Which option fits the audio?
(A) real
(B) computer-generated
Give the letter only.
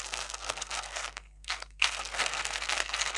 B